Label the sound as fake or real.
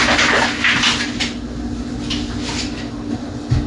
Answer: real